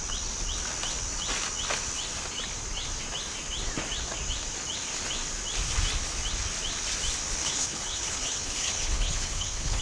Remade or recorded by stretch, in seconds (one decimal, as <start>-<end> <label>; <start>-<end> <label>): 0.0-7.4 recorded; 7.4-9.8 remade